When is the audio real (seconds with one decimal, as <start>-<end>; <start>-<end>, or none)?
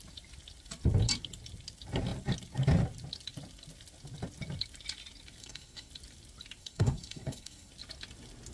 0.0-5.4; 5.9-6.6; 7.7-8.5